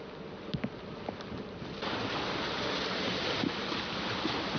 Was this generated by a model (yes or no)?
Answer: no